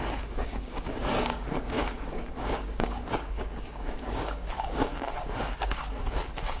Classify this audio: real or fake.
fake